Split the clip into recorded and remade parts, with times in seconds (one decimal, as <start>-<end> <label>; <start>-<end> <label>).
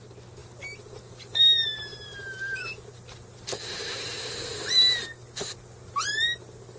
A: 0.0-6.8 recorded